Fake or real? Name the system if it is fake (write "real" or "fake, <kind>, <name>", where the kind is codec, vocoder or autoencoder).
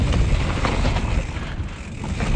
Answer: real